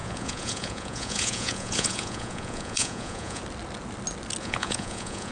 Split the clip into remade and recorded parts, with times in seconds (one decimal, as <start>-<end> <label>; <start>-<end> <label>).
0.0-3.4 remade; 3.4-4.4 recorded; 4.4-5.3 remade